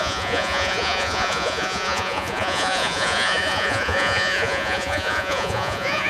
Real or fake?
fake